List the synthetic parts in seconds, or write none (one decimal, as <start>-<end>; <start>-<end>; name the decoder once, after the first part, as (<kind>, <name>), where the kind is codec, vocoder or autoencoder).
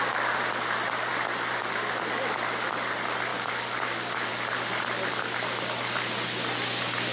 none